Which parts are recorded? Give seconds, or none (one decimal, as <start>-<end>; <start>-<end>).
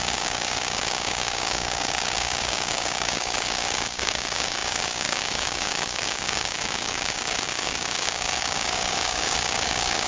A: none